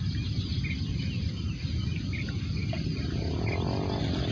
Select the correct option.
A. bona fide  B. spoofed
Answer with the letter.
A